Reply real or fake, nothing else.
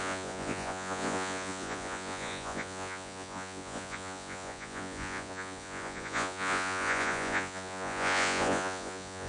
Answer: fake